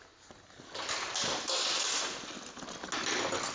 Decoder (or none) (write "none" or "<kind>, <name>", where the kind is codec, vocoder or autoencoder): none